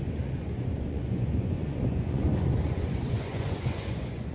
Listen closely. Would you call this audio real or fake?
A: fake